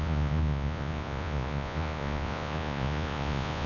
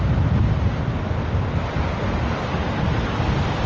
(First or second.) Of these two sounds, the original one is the second